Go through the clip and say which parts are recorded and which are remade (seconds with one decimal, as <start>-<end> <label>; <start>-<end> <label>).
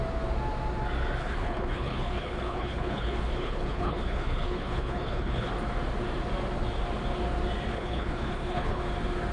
0.0-1.2 recorded; 1.2-5.5 remade; 5.5-7.7 recorded; 7.7-8.8 remade; 8.8-9.3 recorded